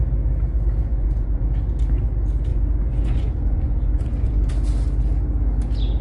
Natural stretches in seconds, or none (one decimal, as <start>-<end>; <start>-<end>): 0.0-0.9; 1.4-2.5; 4.5-6.0